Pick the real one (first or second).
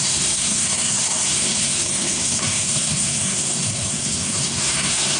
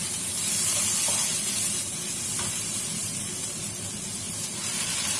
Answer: second